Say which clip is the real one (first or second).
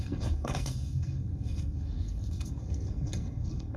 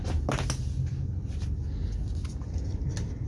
second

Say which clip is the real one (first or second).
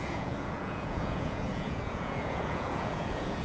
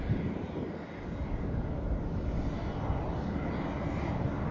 second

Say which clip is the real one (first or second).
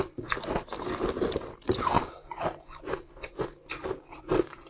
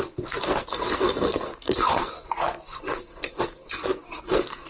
first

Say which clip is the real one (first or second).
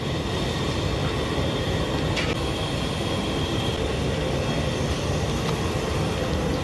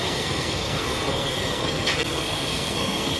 first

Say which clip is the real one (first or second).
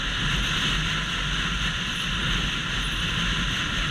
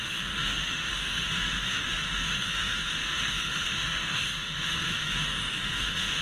first